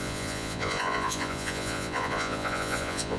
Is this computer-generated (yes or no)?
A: yes